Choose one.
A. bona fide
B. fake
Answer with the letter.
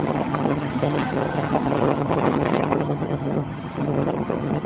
B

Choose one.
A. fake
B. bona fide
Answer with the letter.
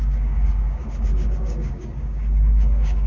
A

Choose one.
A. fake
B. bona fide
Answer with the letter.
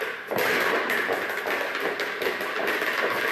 B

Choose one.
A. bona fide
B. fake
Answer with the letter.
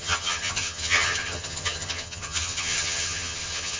B